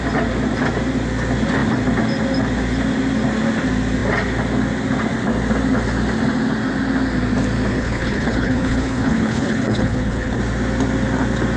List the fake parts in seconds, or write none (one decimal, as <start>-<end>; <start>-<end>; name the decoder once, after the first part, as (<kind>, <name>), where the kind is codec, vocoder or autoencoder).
7.7-10.4 (codec, HILCodec)